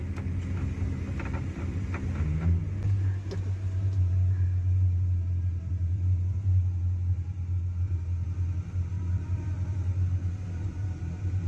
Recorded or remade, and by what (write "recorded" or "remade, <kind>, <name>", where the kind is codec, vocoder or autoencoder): recorded